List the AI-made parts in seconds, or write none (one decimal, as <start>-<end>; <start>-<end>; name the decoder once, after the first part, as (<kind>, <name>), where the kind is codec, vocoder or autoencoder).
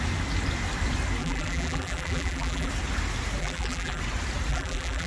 1.2-2.7 (vocoder, BigVGAN v2); 3.4-4.0; 4.5-5.1